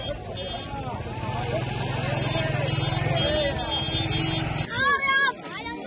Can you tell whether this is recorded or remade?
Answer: recorded